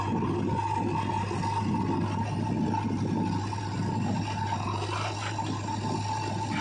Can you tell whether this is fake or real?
real